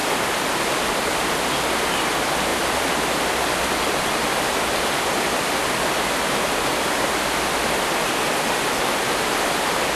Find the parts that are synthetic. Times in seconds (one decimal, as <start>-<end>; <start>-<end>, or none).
0.0-1.3; 2.5-7.2